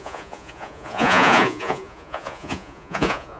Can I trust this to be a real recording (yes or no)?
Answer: no